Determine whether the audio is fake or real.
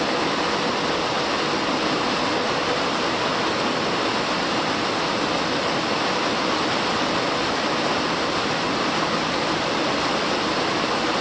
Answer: real